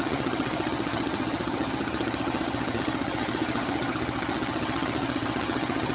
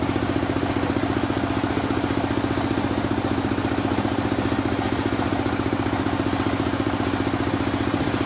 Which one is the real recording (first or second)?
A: second